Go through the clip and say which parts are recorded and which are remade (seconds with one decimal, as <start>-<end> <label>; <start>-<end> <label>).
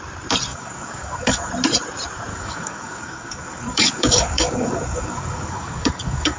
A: 0.0-0.5 recorded; 0.5-1.5 remade; 1.5-2.3 recorded; 2.3-6.4 remade